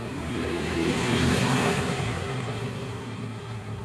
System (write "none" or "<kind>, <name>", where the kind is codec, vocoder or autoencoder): codec, SNAC